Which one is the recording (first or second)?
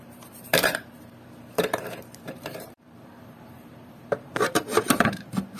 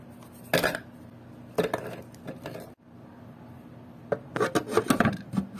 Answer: second